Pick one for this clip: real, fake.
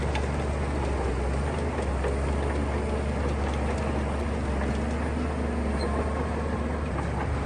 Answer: real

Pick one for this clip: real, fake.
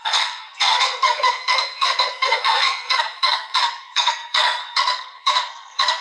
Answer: fake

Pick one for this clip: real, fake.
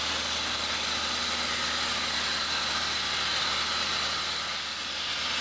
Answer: real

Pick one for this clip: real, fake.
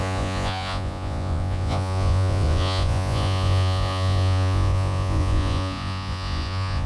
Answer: fake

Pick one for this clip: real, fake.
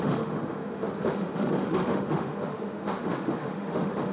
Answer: fake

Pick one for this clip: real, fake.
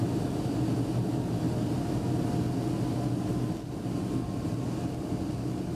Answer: real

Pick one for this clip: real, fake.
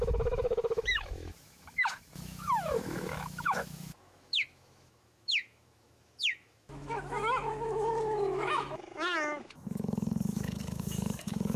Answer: fake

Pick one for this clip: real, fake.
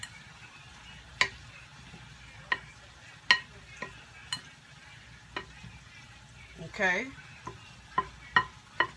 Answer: real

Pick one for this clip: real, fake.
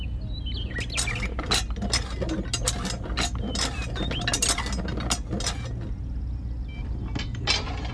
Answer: real